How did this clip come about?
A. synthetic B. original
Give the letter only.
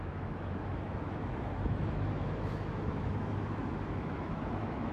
A